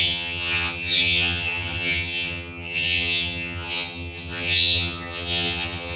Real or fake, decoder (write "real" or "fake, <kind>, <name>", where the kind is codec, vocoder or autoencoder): fake, vocoder, HiFi-GAN